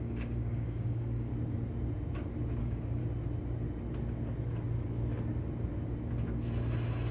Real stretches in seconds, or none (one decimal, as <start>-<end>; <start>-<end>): 1.3-2.6; 3.0-7.1